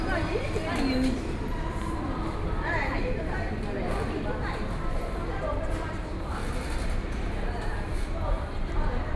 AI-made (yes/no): yes